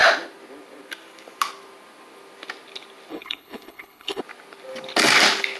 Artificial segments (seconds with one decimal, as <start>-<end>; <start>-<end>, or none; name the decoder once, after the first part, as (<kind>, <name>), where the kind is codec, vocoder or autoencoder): 3.1-4.2 (codec, HILCodec)